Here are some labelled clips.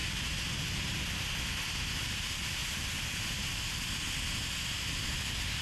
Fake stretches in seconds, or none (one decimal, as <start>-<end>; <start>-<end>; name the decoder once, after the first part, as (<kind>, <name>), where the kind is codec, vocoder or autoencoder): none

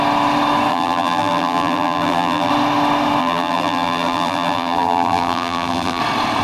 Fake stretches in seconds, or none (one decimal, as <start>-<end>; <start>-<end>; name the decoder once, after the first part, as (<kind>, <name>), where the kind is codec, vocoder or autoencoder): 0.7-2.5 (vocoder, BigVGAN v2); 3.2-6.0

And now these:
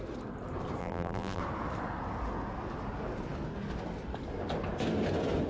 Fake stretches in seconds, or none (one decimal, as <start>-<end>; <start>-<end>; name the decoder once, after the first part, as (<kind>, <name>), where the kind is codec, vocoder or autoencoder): 0.8-1.4 (vocoder, BigVGAN v2)